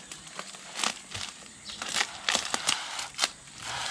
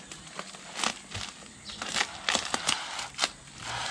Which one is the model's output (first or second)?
first